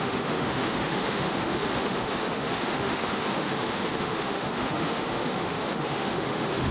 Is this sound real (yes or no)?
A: no